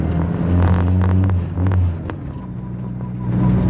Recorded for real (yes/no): yes